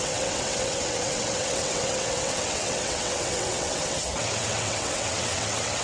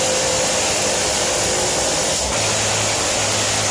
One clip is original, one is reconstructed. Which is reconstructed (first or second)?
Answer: first